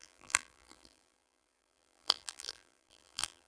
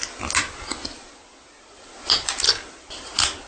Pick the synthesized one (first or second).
first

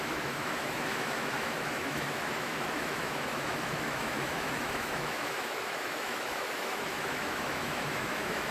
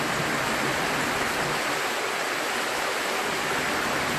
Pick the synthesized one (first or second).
first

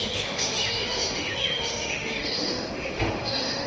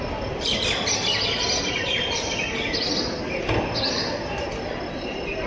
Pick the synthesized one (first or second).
first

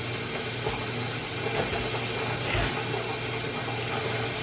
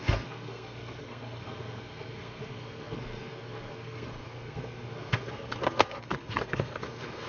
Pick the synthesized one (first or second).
second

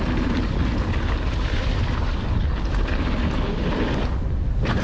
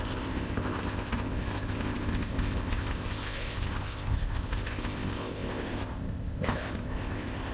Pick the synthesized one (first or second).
second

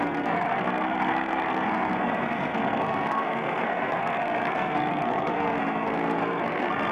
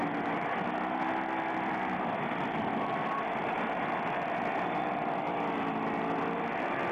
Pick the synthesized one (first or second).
first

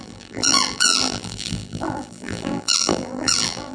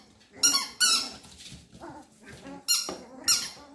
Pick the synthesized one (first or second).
first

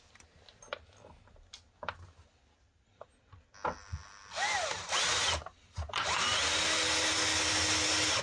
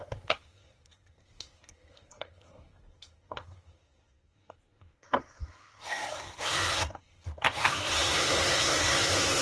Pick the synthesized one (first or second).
second